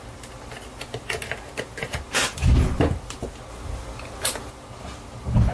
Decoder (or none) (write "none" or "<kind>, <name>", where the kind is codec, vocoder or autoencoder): none